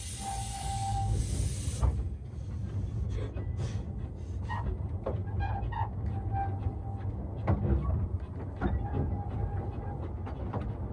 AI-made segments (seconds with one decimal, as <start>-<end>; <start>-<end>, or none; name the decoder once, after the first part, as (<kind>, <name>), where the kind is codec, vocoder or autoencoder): 0.5-1.2 (codec, DAC); 1.9-2.5